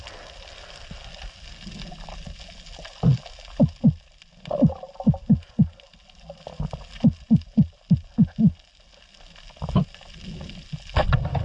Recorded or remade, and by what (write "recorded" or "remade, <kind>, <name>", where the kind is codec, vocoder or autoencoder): recorded